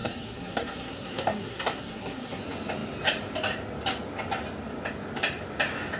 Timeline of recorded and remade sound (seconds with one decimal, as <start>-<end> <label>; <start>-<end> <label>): 0.0-2.4 remade; 2.4-6.0 recorded